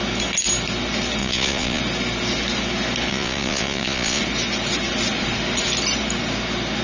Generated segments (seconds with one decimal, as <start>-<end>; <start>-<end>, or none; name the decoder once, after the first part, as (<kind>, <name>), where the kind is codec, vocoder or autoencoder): 1.2-1.8 (vocoder, Vocos); 3.1-4.2